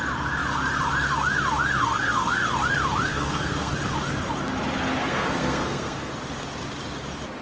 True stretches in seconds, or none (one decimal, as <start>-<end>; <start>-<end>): 0.0-1.8; 2.4-3.1; 3.7-5.0; 6.1-7.4